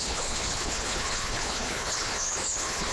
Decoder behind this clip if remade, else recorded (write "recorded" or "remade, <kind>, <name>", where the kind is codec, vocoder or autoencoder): remade, codec, HILCodec